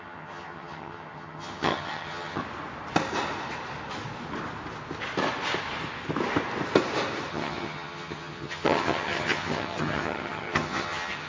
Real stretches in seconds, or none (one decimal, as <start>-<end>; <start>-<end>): 2.4-7.3